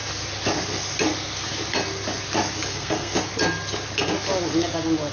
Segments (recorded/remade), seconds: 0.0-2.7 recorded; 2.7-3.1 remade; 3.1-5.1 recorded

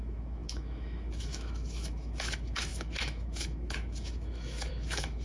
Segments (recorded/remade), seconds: 0.0-5.2 remade

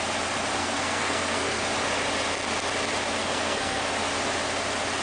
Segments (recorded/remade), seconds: 0.0-0.6 recorded; 0.6-1.6 remade; 1.6-3.2 recorded; 3.2-3.8 remade; 3.8-5.0 recorded

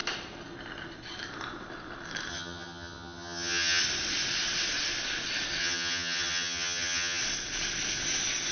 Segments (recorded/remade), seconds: 0.0-2.3 recorded; 2.3-3.8 remade; 3.8-5.6 recorded; 5.6-7.2 remade; 7.2-8.5 recorded

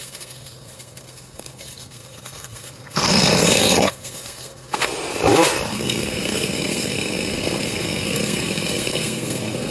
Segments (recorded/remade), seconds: 0.0-4.9 remade; 4.9-5.7 recorded; 5.7-9.7 remade

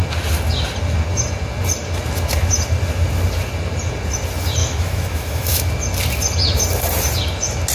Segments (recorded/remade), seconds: 0.0-4.6 recorded; 4.6-5.6 remade; 5.6-7.7 recorded